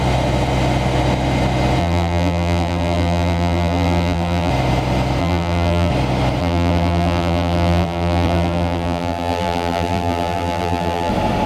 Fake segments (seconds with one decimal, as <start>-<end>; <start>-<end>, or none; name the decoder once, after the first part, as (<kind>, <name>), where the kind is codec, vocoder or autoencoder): 1.8-4.5 (vocoder, BigVGAN v2); 5.2-5.9; 6.4-11.1